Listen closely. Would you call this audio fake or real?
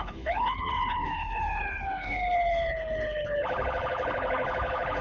fake